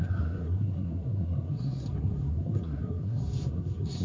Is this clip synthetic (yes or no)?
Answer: yes